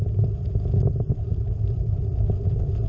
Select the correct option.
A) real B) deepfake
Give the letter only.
A